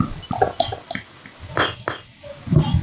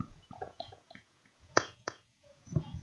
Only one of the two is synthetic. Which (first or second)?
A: second